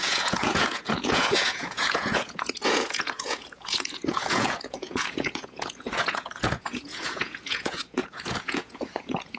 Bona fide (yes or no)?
no